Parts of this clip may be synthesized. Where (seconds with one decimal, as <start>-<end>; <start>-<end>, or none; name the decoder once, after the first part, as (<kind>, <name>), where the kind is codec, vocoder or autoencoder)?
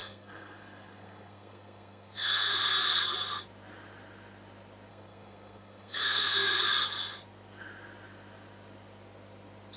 0.0-2.6 (codec, SNAC); 4.9-6.6